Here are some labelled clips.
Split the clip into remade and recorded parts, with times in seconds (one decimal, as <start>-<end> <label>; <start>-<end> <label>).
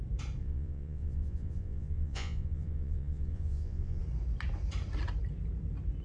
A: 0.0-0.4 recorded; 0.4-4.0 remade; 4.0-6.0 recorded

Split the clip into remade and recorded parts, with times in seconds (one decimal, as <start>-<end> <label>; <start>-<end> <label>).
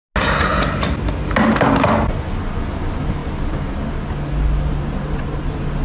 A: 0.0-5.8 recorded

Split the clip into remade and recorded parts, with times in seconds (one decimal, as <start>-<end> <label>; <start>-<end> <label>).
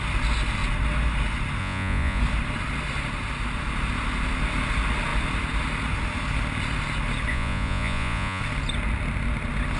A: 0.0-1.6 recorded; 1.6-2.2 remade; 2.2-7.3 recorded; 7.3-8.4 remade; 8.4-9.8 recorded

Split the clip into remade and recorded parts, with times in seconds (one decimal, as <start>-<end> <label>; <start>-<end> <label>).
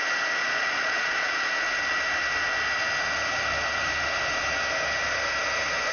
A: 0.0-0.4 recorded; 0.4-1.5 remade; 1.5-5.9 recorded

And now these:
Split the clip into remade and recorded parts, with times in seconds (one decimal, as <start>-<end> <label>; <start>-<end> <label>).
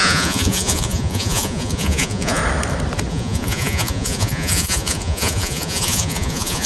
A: 0.0-2.4 remade; 2.4-3.1 recorded; 3.1-6.7 remade